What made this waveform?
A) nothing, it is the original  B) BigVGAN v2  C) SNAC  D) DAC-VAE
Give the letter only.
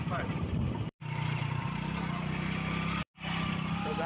B